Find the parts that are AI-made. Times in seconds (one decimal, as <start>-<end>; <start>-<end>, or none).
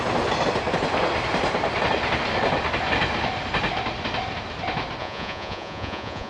5.0-6.3